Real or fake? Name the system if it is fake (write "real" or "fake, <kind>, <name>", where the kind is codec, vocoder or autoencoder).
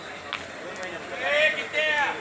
real